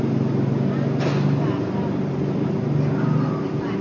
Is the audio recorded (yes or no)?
yes